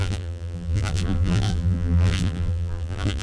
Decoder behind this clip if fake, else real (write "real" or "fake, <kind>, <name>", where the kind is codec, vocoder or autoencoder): fake, vocoder, BigVGAN v2